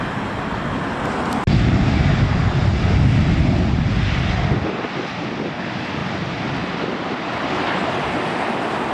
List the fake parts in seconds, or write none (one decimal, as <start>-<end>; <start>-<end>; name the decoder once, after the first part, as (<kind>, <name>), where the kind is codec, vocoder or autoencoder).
none